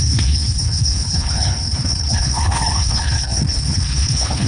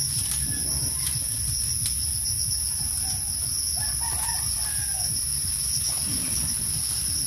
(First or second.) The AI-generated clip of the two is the first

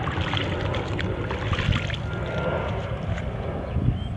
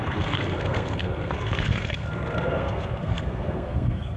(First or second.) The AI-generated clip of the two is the second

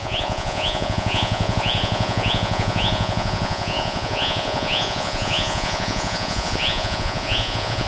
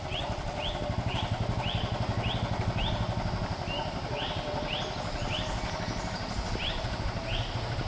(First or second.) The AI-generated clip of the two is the first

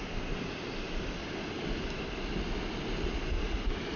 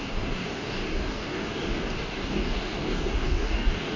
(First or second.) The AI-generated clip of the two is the second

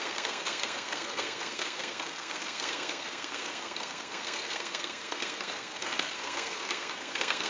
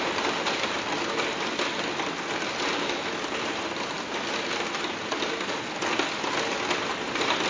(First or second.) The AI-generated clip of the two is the first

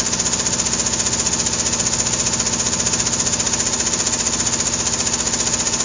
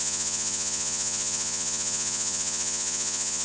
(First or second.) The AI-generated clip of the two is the second